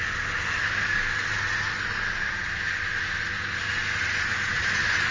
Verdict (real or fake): real